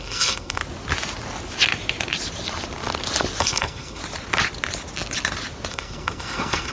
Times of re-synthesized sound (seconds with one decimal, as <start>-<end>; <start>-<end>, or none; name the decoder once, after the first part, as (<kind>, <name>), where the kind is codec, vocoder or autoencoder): 0.0-0.6 (codec, SNAC); 3.4-4.0; 5.7-6.7